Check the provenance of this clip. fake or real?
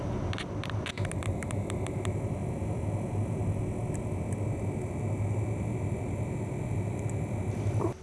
real